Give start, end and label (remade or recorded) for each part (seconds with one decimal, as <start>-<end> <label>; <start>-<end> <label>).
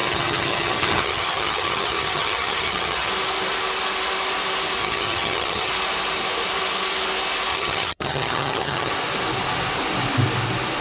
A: 0.0-3.1 remade; 3.1-4.8 recorded; 4.8-5.7 remade; 5.7-7.5 recorded; 7.5-8.9 remade; 8.9-10.8 recorded